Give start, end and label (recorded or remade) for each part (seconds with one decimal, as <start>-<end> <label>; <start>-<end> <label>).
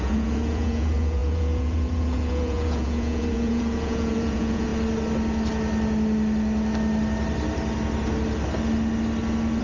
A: 0.0-4.7 remade; 4.7-9.6 recorded